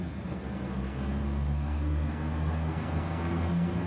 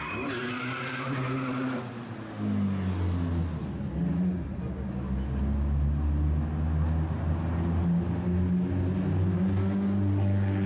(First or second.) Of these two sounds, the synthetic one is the first